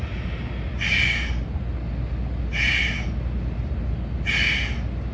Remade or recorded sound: recorded